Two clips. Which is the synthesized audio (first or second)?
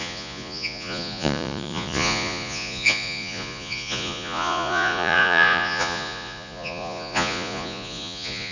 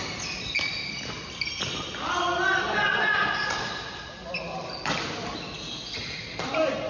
first